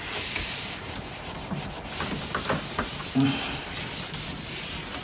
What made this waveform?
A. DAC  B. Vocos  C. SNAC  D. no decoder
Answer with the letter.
D